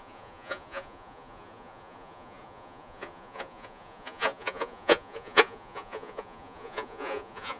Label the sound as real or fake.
fake